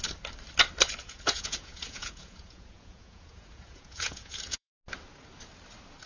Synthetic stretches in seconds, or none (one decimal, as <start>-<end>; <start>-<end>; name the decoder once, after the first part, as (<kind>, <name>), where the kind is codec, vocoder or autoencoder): 1.0-4.7 (vocoder, Vocos)